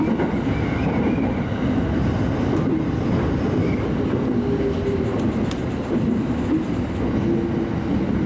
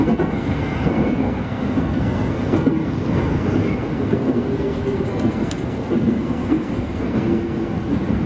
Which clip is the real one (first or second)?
first